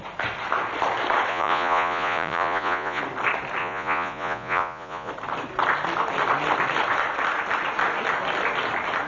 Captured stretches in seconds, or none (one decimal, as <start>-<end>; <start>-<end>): 0.0-1.3; 3.0-3.6; 5.1-9.1